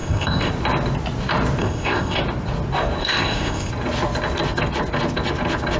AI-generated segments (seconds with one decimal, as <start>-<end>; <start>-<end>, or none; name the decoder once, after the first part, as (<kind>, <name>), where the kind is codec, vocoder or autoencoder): 0.0-0.5 (codec, ZipCodec); 1.6-2.2; 3.0-3.7